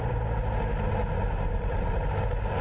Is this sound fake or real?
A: real